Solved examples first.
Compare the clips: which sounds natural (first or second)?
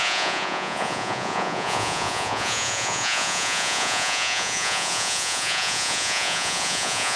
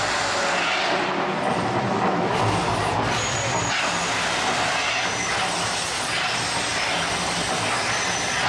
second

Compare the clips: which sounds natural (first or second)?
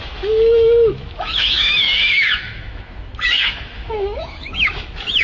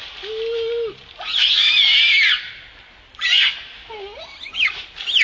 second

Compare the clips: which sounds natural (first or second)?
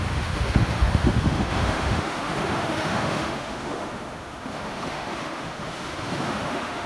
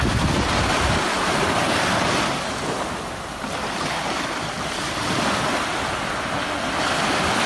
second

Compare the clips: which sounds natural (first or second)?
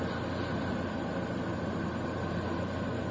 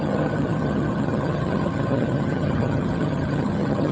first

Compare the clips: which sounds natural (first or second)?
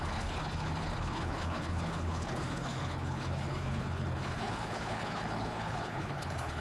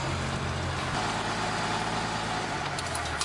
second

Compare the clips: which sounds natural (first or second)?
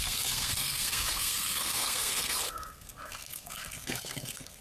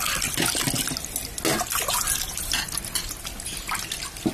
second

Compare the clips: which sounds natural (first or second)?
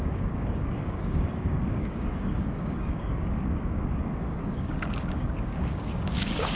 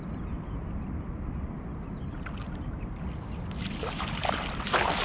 second